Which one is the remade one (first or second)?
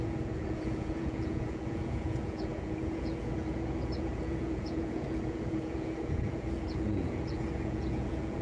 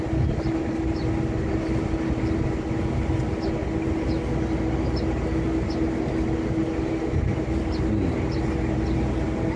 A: first